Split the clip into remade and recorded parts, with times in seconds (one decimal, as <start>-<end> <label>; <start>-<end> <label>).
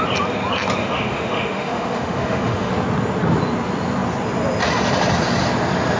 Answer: 0.0-0.8 recorded; 0.8-2.7 remade; 2.7-6.0 recorded